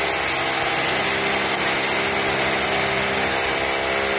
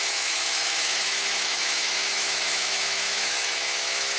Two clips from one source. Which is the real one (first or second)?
first